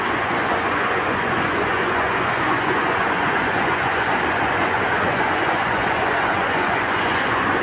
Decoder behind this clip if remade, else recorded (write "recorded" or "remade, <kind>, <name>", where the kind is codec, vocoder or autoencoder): remade, vocoder, Vocos